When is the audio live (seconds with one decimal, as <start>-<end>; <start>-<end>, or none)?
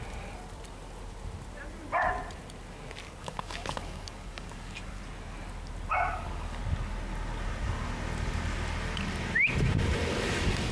0.0-3.2; 5.0-5.9; 6.6-10.7